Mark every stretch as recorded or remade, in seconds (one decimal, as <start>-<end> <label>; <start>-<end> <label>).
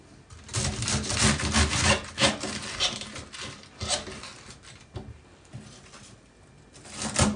0.0-7.4 recorded